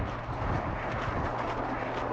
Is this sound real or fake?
real